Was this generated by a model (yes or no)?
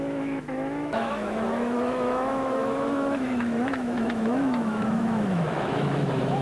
yes